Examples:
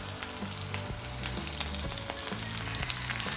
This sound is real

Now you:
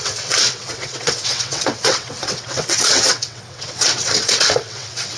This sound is fake